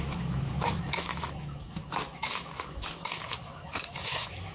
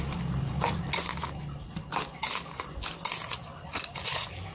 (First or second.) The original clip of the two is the second